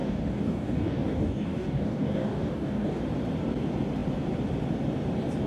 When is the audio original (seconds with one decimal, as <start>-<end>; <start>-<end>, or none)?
3.0-5.5